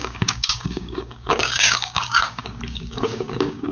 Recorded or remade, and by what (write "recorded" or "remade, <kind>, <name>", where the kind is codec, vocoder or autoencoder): remade, codec, DAC